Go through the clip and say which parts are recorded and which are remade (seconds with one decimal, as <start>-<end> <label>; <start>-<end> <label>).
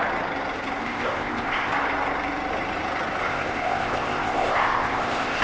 0.0-0.8 recorded; 0.8-1.7 remade; 1.7-3.2 recorded; 3.2-5.4 remade